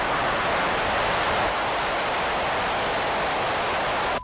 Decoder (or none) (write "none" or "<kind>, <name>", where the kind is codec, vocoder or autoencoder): none